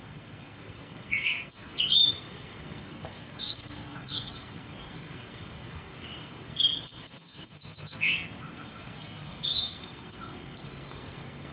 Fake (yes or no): yes